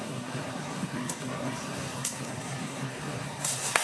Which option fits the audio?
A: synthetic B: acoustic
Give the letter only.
A